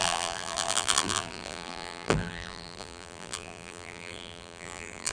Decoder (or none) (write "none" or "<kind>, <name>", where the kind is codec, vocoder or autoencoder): vocoder, BigVGAN v2